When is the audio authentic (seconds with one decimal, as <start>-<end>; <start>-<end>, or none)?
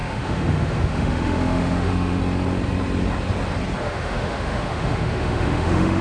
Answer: 2.2-3.8